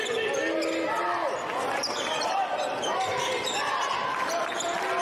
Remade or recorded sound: recorded